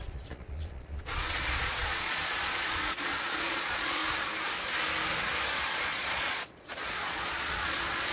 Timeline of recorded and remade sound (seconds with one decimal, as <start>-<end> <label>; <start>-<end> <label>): 0.0-4.0 remade; 4.0-5.8 recorded; 5.8-8.1 remade